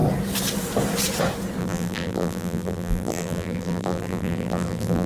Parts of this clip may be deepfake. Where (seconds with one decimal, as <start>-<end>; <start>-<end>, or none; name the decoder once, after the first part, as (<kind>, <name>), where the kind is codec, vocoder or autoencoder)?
1.6-5.1 (vocoder, BigVGAN v2)